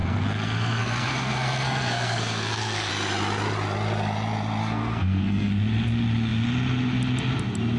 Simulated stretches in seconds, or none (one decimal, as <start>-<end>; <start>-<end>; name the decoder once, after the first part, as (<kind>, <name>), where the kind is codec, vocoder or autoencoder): 0.0-2.9 (codec, SNAC); 4.6-5.5